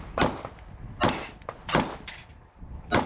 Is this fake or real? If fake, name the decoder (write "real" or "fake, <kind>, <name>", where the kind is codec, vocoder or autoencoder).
real